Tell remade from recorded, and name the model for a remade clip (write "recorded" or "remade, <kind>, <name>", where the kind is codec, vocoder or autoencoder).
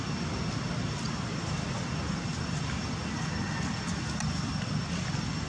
recorded